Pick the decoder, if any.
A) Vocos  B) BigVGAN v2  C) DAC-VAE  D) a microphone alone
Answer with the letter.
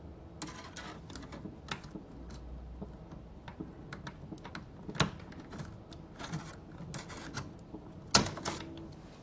D